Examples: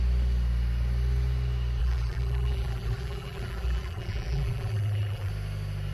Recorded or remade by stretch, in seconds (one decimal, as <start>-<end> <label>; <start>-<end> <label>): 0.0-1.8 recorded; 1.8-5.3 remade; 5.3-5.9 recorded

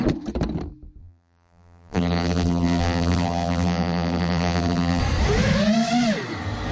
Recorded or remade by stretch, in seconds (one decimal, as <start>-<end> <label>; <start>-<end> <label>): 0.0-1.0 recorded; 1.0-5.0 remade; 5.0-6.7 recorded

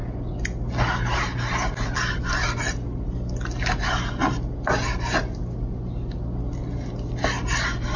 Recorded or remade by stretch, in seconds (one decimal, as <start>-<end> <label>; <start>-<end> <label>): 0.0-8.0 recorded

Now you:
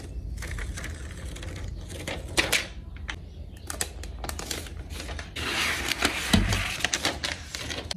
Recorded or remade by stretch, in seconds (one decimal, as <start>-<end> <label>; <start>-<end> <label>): 0.0-8.0 recorded

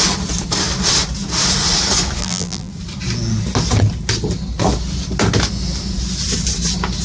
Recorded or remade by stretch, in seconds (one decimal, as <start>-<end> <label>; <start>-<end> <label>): 0.0-2.2 recorded; 2.2-2.7 remade; 2.7-7.0 recorded

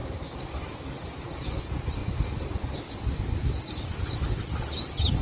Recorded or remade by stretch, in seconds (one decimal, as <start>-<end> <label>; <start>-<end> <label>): 0.0-1.2 remade; 1.2-2.0 recorded; 2.0-5.2 remade

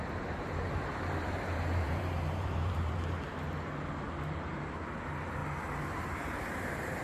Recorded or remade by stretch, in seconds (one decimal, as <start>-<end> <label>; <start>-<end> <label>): 0.0-3.3 remade; 3.3-4.3 recorded; 4.3-5.4 remade; 5.4-6.4 recorded; 6.4-7.0 remade